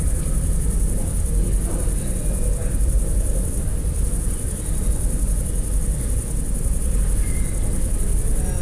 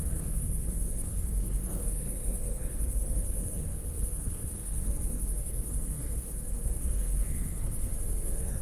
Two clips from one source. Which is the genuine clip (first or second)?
first